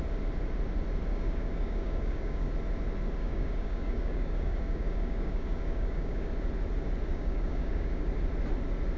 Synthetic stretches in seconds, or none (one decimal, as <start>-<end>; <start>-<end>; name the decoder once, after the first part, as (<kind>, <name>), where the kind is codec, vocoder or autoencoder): 1.1-2.5 (codec, DAC); 3.2-6.3; 7.1-8.1